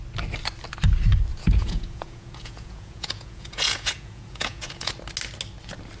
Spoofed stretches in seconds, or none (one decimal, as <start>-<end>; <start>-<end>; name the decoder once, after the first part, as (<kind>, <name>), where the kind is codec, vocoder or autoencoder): 1.3-4.9 (vocoder, Vocos)